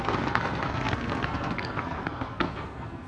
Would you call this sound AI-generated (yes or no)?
yes